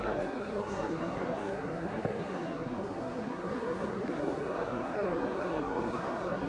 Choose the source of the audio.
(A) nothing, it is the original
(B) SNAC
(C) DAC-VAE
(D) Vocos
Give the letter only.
B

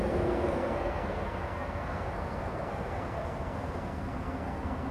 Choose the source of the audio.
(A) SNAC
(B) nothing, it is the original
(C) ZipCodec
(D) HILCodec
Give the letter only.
A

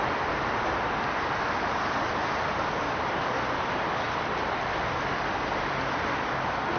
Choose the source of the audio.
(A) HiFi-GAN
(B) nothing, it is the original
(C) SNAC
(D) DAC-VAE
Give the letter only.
B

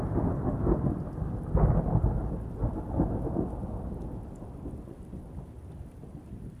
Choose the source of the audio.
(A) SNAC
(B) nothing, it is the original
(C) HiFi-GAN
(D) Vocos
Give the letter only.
B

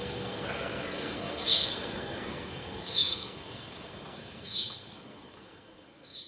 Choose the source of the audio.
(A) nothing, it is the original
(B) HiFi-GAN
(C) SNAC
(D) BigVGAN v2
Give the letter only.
C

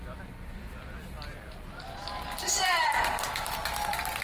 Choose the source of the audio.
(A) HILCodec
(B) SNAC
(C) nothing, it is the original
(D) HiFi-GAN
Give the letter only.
C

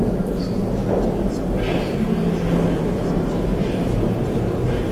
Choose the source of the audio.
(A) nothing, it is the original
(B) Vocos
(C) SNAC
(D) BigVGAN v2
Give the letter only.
A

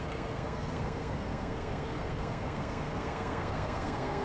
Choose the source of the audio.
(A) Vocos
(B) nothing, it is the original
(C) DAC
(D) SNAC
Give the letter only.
D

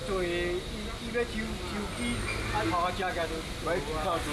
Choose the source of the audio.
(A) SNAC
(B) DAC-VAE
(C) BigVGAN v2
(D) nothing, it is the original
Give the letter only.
D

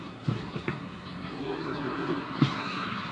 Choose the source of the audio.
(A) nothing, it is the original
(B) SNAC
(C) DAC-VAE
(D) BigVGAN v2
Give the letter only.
B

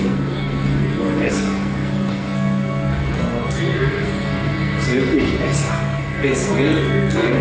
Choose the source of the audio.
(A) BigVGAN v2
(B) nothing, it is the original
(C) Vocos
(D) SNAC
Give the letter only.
D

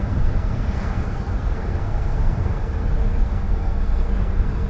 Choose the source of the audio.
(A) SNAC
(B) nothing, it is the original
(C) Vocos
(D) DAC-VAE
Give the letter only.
A